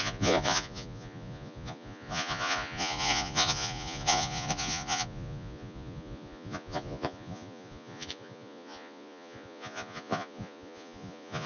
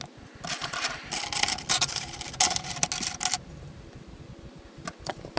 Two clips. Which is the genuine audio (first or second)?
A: second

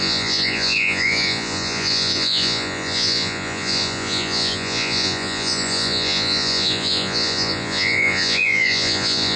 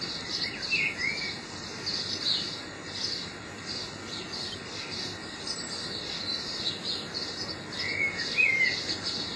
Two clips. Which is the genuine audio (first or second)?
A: second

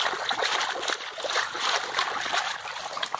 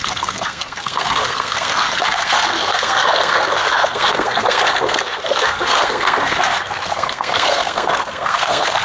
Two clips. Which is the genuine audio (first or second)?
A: first